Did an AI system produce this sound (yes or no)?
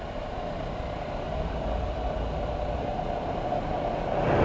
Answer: no